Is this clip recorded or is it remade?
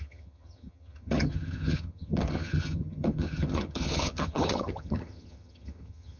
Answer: remade